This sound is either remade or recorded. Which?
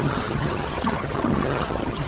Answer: remade